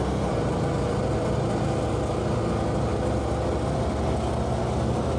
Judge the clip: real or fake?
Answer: real